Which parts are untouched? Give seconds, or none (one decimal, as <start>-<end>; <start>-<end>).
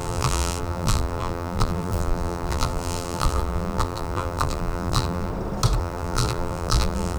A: 5.3-5.8